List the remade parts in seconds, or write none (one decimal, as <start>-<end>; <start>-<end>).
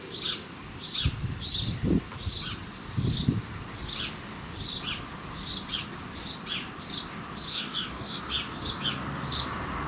7.5-8.2